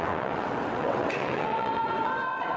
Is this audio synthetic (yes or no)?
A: yes